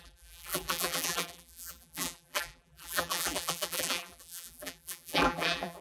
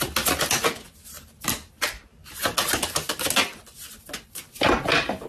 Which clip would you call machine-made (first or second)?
first